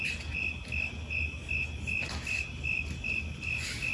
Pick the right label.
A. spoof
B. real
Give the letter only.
B